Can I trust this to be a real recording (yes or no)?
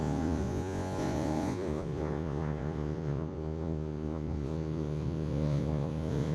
no